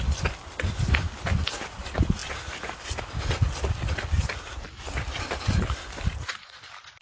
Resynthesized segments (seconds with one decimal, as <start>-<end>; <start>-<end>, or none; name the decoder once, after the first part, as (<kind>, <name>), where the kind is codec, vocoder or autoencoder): none